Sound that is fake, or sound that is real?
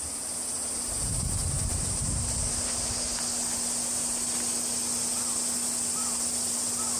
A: real